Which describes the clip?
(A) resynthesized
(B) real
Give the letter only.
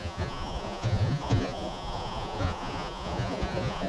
A